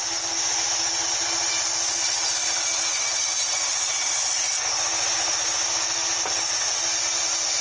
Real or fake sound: real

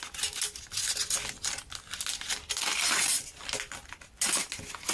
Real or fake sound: real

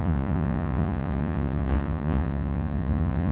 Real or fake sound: fake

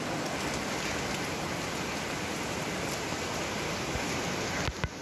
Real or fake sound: real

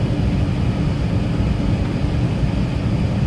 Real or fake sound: real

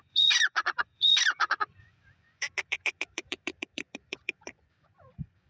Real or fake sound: fake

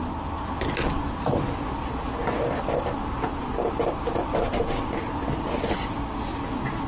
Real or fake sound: real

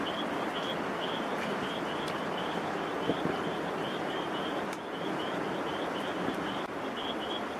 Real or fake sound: real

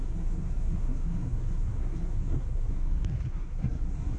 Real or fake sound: fake